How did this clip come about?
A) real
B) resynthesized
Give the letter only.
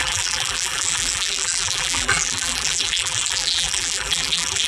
B